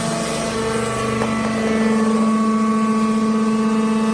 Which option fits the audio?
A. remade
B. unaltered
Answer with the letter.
B